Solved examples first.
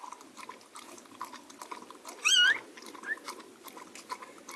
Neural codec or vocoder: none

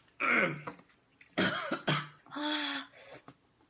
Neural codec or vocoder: none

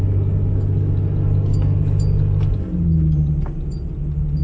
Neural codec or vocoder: none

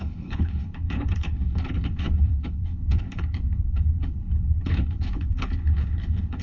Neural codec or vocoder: codec, HILCodec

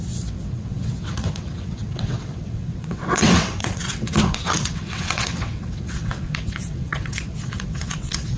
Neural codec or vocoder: vocoder, WaveNeXt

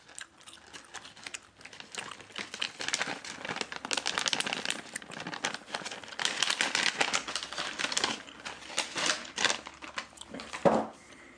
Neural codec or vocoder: none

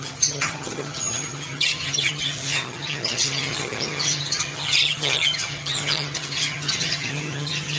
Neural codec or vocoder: vocoder, HiFi-GAN